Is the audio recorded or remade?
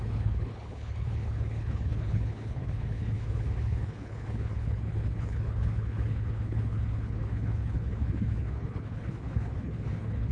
remade